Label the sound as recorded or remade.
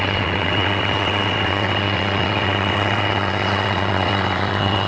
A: remade